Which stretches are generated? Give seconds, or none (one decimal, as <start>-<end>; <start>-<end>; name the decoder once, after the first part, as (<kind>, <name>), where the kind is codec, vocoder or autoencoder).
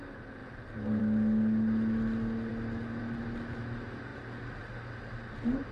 none